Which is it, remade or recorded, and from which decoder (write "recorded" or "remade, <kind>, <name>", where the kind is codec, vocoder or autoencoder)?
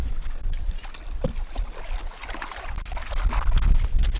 recorded